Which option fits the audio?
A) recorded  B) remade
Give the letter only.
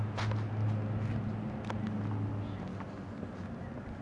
A